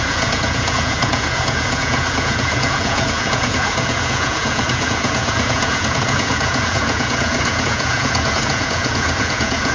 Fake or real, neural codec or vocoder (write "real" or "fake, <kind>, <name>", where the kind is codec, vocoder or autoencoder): fake, vocoder, Vocos